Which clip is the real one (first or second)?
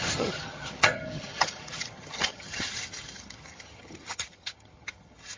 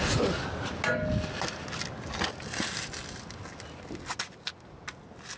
second